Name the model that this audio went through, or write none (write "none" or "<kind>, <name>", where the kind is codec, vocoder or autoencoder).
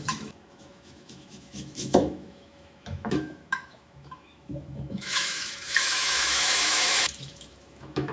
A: autoencoder, DAC-VAE